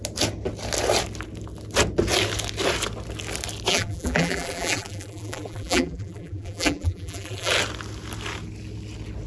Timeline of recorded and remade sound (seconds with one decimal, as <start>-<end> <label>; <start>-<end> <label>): 0.0-3.7 recorded; 3.7-7.5 remade; 7.5-9.3 recorded